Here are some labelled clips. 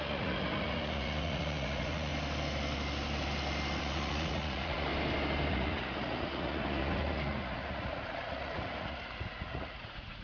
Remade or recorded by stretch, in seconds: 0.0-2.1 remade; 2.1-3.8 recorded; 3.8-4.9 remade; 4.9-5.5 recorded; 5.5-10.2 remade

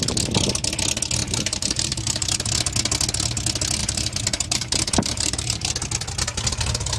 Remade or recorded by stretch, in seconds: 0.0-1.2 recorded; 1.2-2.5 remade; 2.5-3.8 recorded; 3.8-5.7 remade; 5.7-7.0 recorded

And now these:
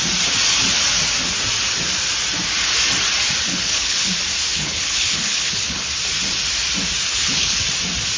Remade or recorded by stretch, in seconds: 0.0-3.5 recorded; 3.5-4.1 remade; 4.1-4.5 recorded; 4.5-5.9 remade; 5.9-7.1 recorded; 7.1-7.6 remade; 7.6-8.2 recorded

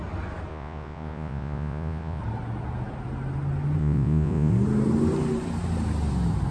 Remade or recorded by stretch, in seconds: 0.0-0.5 recorded; 0.5-2.2 remade; 2.2-3.8 recorded; 3.8-4.5 remade; 4.5-6.5 recorded

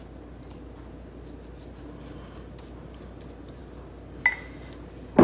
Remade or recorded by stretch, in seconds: 0.0-5.2 recorded

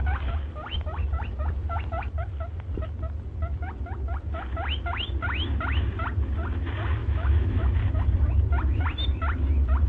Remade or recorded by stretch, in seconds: 0.0-7.0 recorded; 7.0-7.8 remade; 7.8-9.9 recorded

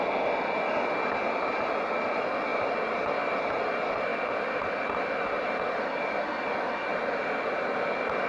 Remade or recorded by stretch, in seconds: 0.0-8.3 recorded